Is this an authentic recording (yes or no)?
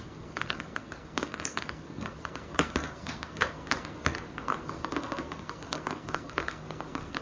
no